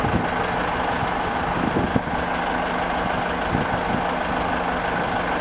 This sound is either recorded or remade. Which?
recorded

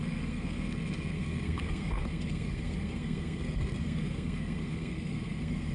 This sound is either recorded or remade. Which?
remade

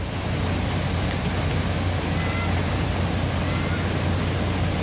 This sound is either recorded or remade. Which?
recorded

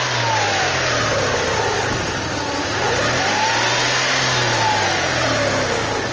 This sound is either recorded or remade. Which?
recorded